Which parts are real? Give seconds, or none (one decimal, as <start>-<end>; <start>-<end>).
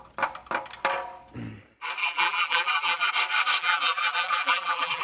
0.0-2.0; 3.1-3.6